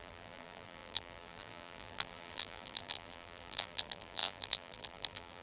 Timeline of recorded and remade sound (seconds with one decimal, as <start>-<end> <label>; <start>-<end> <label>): 0.0-5.4 remade